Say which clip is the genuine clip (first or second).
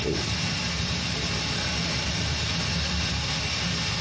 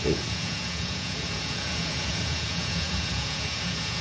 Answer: first